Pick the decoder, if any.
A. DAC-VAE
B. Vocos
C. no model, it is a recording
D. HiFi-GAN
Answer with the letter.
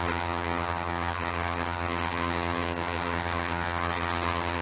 D